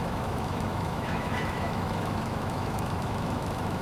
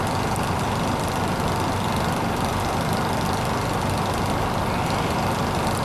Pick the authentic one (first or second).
second